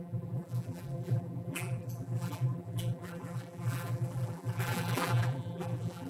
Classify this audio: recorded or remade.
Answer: remade